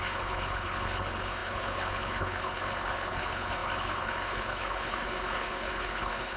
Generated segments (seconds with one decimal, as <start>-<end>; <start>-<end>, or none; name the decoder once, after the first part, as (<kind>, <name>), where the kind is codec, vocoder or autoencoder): 0.0-6.4 (codec, HILCodec)